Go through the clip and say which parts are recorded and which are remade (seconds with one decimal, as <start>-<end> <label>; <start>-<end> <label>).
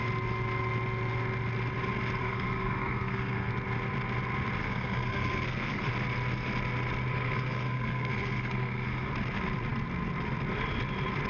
0.0-2.2 recorded; 2.2-3.5 remade; 3.5-4.6 recorded; 4.6-5.9 remade; 5.9-7.1 recorded; 7.1-9.1 remade; 9.1-11.3 recorded